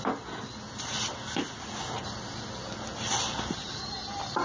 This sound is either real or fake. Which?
real